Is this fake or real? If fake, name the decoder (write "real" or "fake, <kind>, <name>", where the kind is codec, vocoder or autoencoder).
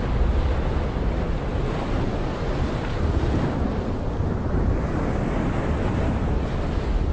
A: real